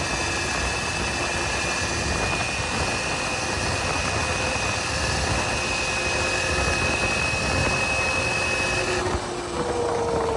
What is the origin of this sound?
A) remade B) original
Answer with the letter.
B